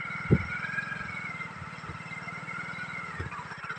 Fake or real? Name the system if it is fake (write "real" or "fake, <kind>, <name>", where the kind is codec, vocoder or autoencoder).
real